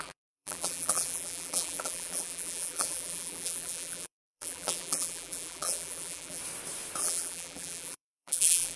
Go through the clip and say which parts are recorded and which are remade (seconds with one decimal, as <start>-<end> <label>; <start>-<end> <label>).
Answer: 0.0-6.4 remade; 6.4-7.0 recorded; 7.0-8.8 remade

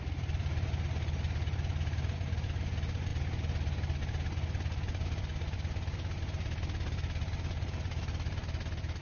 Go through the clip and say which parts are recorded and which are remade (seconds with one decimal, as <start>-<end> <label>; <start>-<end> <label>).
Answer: 0.0-9.0 recorded

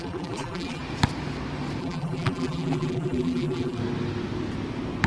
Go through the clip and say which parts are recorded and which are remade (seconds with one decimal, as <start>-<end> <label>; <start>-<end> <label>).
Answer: 0.0-0.8 remade; 0.8-1.8 recorded; 1.8-3.8 remade; 3.8-5.1 recorded